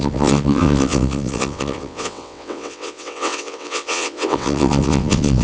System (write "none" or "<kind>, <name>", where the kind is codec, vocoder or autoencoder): vocoder, WaveNeXt